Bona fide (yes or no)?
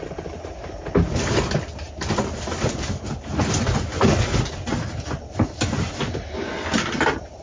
yes